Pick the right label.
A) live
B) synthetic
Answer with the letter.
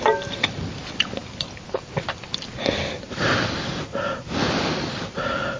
A